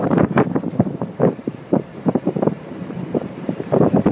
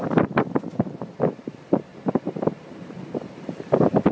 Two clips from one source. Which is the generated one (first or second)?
first